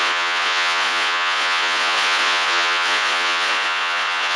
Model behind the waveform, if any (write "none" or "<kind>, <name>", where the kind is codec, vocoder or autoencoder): vocoder, Vocos